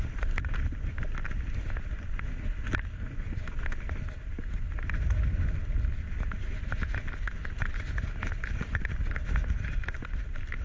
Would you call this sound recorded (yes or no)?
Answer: yes